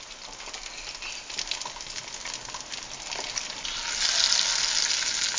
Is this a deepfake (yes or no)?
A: no